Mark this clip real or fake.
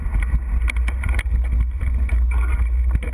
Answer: real